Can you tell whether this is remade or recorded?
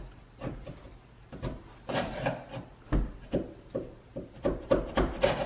remade